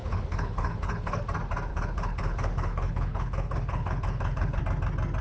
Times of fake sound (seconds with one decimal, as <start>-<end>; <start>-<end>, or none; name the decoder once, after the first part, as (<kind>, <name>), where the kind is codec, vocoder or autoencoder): 0.0-1.2 (codec, HILCodec); 1.7-4.6